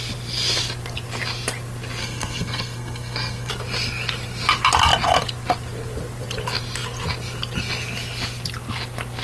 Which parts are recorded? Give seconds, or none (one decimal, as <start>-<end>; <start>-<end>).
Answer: 0.0-2.0; 3.5-9.2